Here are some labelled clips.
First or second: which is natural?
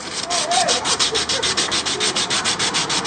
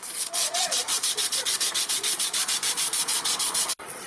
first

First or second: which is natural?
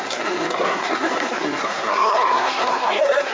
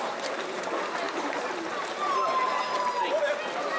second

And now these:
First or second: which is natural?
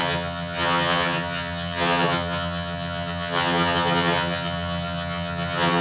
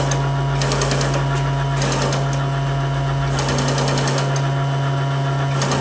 second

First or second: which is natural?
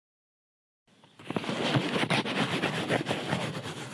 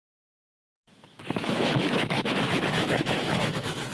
first